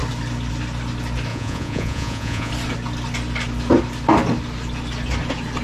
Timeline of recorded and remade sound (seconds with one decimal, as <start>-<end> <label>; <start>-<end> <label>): 0.0-1.3 recorded; 1.3-2.5 remade; 2.5-5.6 recorded